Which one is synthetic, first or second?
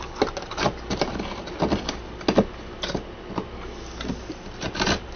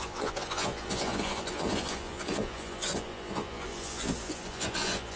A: second